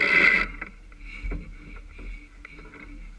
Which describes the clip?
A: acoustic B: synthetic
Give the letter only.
A